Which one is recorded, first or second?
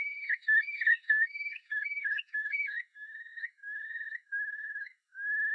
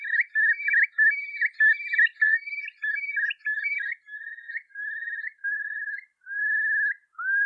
second